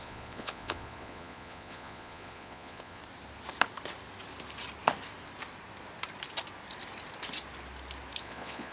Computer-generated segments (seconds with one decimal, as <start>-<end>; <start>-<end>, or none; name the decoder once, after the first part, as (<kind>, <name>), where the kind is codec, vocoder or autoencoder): 0.0-3.0 (vocoder, Vocos); 8.2-8.7